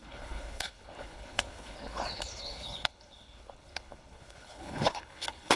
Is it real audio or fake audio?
fake